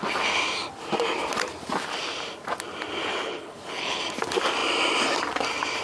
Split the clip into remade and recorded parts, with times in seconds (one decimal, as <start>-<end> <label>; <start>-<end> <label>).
0.0-3.1 recorded; 3.1-4.0 remade; 4.0-5.8 recorded